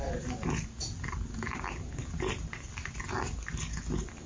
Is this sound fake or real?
real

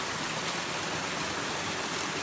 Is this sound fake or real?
real